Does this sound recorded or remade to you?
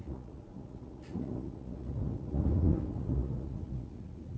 remade